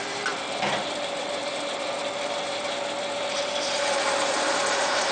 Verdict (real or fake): fake